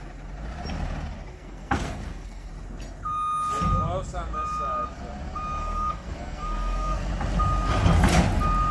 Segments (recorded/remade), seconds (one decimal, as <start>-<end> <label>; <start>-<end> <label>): 0.0-1.3 recorded; 1.3-2.5 remade; 2.5-5.6 recorded; 5.6-7.1 remade; 7.1-8.7 recorded